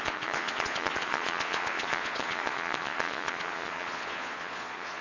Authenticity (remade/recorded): remade